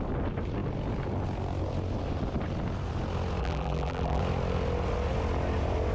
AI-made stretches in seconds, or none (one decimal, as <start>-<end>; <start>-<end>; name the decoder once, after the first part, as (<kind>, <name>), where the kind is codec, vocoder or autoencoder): 3.4-4.2 (vocoder, BigVGAN v2)